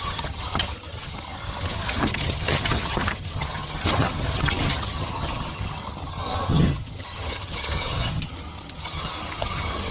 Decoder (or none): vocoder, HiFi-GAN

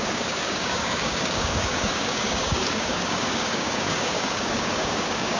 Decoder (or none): codec, DAC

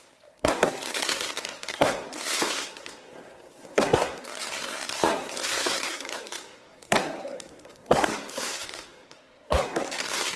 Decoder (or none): codec, SNAC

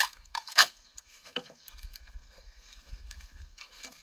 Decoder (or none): codec, SNAC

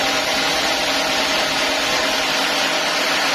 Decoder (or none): none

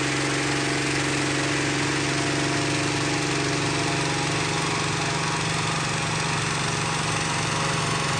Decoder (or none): none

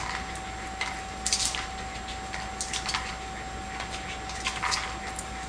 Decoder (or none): none